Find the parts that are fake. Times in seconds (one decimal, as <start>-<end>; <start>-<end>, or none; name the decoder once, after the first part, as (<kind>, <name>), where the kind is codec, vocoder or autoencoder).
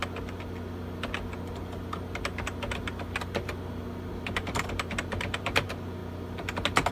4.1-6.0 (vocoder, BigVGAN v2)